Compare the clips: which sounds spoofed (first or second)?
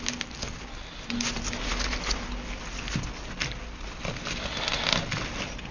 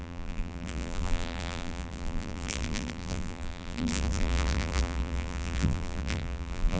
second